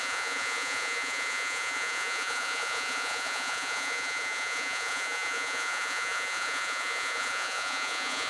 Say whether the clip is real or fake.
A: fake